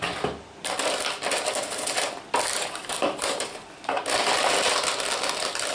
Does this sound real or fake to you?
real